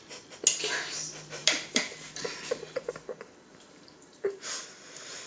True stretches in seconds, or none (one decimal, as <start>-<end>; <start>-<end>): 0.0-1.4; 4.6-5.3